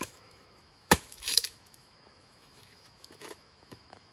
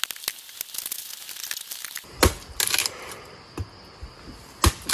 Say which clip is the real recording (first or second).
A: second